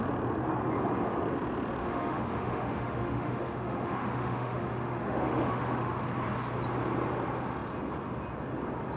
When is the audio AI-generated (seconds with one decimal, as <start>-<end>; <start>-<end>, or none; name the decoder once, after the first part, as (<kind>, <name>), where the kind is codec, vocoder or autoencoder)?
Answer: 1.8-6.0 (autoencoder, DAC-VAE)